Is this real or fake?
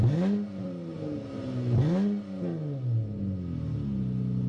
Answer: real